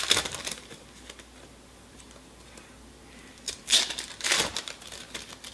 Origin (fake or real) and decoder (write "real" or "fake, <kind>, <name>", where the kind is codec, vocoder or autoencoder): real